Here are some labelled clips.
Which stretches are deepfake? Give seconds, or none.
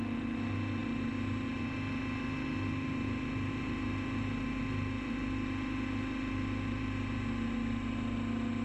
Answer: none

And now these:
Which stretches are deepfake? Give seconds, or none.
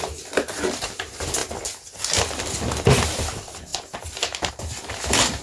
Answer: none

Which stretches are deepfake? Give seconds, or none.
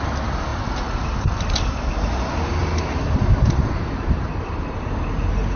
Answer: 2.6-4.5 (vocoder, BigVGAN v2)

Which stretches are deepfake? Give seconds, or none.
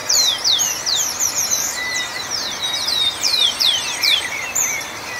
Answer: 1.2-5.2 (vocoder, BigVGAN v2)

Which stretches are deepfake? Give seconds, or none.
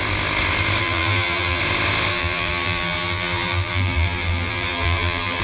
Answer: 0.8-1.6 (vocoder, BigVGAN v2); 2.1-5.4